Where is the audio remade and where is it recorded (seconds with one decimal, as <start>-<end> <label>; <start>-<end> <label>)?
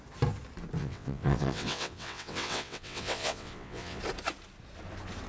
0.0-0.8 recorded; 0.8-4.0 remade; 4.0-5.3 recorded